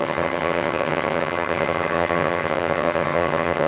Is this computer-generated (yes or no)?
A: yes